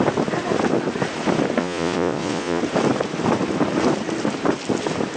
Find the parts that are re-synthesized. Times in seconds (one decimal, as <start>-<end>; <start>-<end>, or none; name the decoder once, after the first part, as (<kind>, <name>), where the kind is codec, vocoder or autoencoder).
1.6-2.6 (vocoder, Vocos)